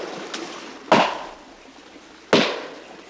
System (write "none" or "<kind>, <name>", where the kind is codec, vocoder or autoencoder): none